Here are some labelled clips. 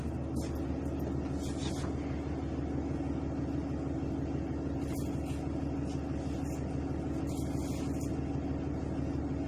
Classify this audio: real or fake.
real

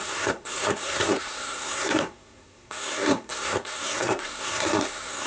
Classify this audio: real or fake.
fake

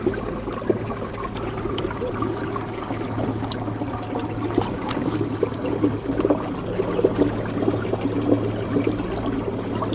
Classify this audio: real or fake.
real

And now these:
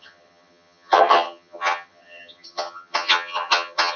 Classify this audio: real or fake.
fake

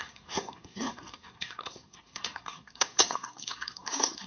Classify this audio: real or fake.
fake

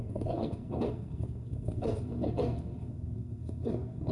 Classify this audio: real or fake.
fake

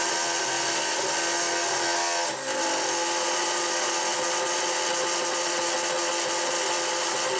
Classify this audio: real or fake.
real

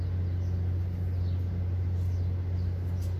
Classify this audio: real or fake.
real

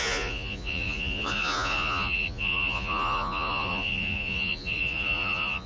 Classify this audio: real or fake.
fake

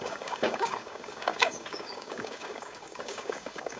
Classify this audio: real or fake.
fake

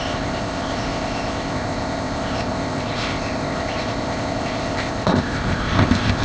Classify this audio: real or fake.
fake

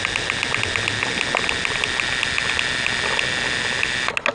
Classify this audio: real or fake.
real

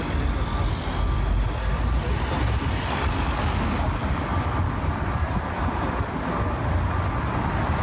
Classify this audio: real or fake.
real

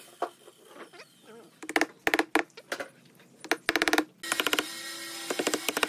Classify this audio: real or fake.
real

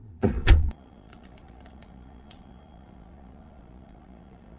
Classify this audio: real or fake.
fake